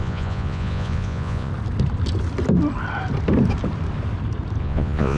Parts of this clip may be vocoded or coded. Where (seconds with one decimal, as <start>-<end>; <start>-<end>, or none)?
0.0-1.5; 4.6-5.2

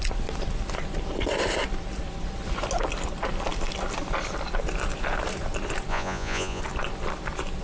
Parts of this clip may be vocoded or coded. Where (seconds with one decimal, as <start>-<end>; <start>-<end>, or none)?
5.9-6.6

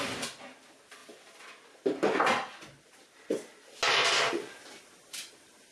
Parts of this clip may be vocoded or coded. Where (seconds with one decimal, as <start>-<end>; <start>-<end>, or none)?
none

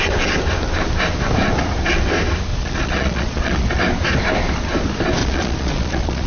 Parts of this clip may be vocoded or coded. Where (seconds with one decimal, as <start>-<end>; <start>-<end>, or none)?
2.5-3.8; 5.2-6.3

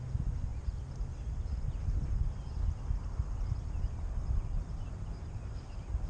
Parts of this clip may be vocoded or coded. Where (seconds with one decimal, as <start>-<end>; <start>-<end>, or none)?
none

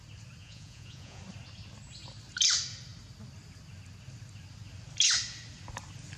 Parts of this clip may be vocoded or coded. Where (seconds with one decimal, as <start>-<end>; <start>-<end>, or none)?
0.4-1.2